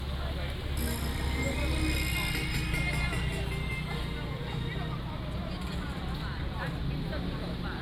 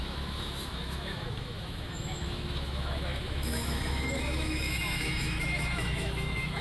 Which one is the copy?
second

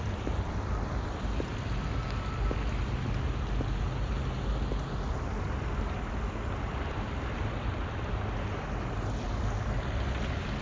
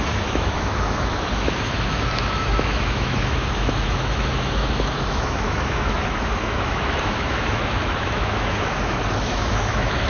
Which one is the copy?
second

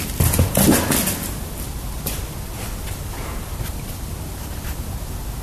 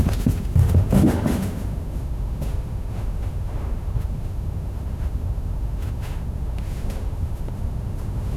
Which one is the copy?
second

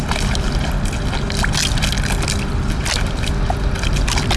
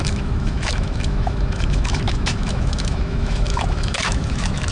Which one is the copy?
second